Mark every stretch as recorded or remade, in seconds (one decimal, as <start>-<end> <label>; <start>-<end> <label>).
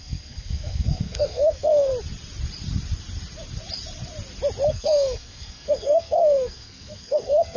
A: 0.0-1.9 remade; 1.9-4.7 recorded; 4.7-7.6 remade